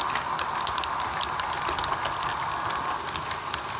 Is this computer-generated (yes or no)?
no